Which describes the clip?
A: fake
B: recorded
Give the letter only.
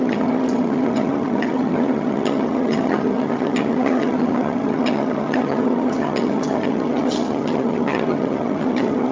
A